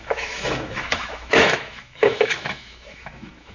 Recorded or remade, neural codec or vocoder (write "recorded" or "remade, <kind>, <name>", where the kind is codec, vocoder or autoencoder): remade, autoencoder, DAC-VAE